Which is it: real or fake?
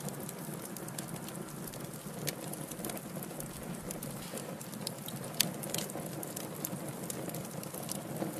real